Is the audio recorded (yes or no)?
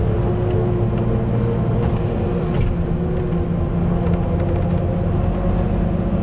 yes